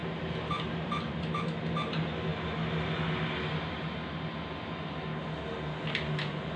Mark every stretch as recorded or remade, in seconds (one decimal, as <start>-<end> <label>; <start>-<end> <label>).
0.0-6.6 recorded